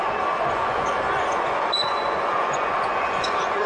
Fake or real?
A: fake